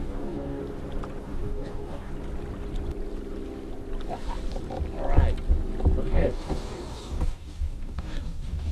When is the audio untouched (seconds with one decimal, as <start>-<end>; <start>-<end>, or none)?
0.6-1.2; 2.1-6.0